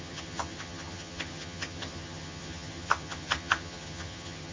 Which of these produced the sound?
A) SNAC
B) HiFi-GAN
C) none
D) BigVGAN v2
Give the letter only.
B